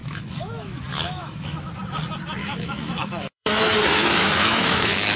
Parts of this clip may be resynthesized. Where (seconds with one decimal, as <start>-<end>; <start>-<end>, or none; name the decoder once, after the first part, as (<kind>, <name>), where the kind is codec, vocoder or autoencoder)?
0.0-1.7 (autoencoder, DAC-VAE); 2.4-5.2